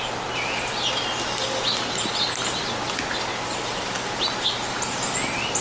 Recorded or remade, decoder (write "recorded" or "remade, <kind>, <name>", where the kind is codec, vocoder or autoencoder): recorded